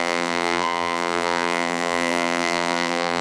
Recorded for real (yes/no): no